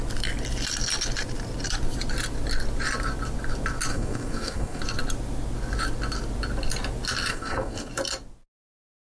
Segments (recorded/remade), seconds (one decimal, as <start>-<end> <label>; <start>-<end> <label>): 0.0-3.9 recorded; 3.9-4.8 remade; 4.8-7.3 recorded; 7.3-7.9 remade; 7.9-9.2 recorded